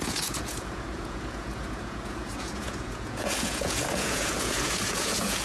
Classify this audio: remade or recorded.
remade